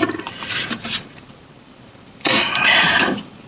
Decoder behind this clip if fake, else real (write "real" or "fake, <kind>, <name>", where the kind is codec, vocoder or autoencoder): fake, vocoder, BigVGAN v2